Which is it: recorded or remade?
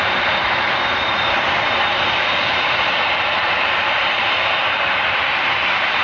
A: remade